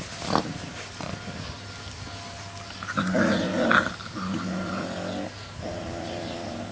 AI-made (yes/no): no